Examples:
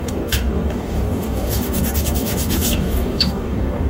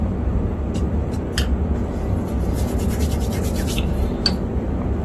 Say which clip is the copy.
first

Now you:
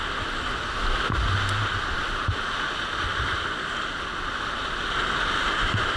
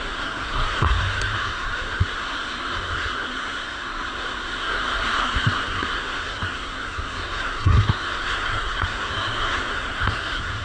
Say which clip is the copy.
second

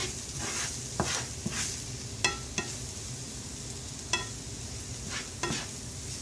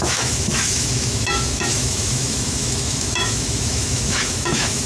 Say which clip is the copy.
second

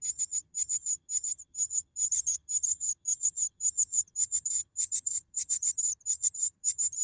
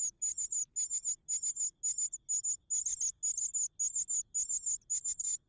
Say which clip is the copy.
first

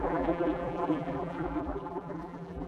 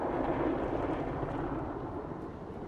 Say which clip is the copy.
first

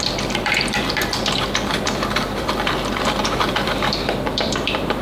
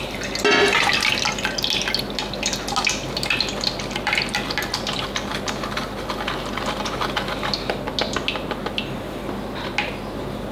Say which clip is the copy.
first